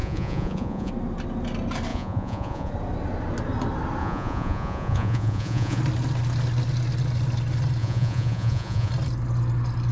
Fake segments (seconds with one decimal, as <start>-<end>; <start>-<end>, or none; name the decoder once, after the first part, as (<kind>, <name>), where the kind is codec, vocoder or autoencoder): 0.0-0.9 (vocoder, Vocos); 1.9-2.7; 4.0-5.8; 7.8-8.9